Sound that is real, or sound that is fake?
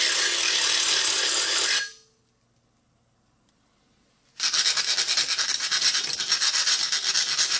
real